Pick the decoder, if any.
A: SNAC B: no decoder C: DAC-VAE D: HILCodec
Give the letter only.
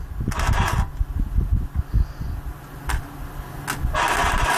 B